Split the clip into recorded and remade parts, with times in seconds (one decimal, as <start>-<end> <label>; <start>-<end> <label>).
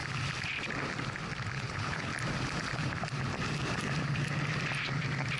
0.0-1.5 recorded; 1.5-2.1 remade; 2.1-5.4 recorded